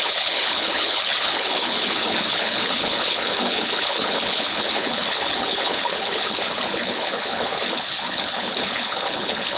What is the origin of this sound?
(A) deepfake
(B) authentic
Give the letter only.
A